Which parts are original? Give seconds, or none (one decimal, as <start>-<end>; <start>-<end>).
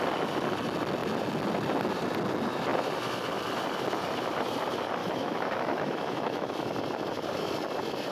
0.0-5.0; 6.5-8.1